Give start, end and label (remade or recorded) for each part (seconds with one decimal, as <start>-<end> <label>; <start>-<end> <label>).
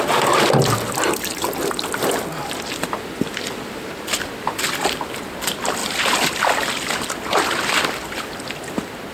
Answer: 0.0-9.1 recorded